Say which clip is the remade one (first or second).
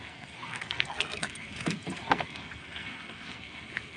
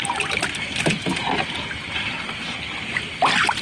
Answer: first